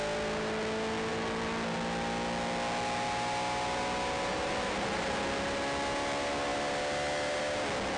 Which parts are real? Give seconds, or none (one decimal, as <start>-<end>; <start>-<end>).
0.0-8.0